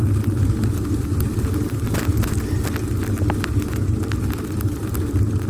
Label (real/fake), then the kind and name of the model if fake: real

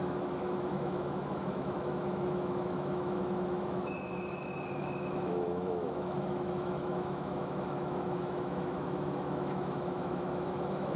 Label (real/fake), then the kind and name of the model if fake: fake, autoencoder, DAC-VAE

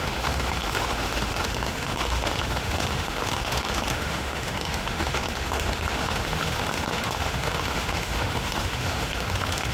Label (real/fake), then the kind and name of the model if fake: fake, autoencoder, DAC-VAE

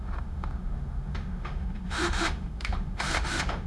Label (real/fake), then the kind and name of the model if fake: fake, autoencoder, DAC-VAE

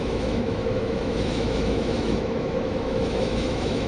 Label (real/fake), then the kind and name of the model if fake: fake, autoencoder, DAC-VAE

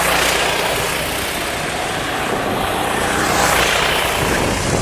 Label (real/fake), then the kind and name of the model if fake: real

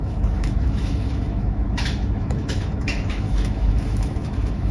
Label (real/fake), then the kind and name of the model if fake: fake, autoencoder, DAC-VAE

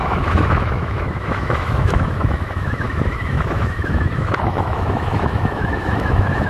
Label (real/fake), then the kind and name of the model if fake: fake, autoencoder, DAC-VAE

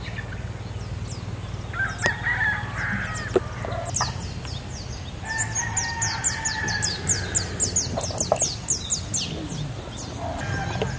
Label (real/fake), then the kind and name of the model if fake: real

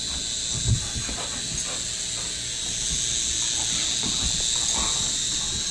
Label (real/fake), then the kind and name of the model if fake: real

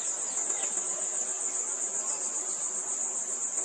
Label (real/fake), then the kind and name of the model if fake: real